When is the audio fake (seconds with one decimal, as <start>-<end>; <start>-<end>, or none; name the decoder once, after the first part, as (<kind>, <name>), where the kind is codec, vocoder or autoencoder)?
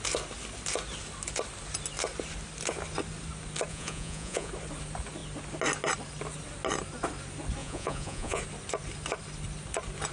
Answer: 3.7-4.5 (vocoder, Vocos); 7.6-8.4